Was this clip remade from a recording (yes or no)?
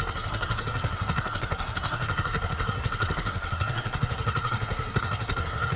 yes